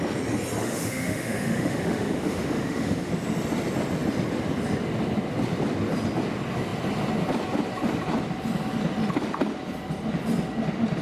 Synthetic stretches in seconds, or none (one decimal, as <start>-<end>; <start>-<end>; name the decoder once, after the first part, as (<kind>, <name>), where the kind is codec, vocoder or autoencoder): 0.6-3.1 (autoencoder, DAC-VAE)